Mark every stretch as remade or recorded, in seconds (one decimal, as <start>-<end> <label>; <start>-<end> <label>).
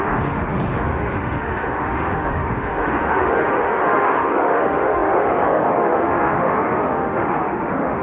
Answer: 0.0-8.0 remade